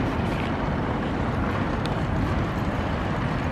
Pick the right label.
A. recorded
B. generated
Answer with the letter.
A